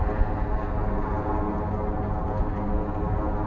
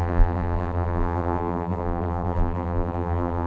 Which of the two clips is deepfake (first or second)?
second